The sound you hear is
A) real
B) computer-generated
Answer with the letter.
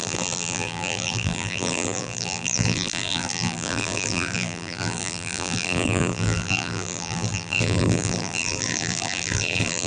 B